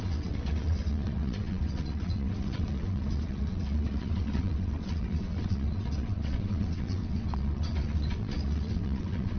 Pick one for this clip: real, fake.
fake